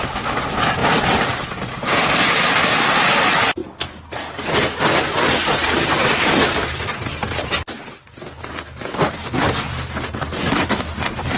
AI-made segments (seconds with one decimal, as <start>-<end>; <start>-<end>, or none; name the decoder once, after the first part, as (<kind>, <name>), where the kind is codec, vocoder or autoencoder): 0.8-3.0 (vocoder, BigVGAN v2)